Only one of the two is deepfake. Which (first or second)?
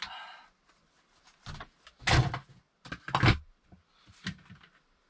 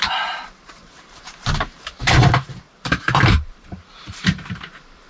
second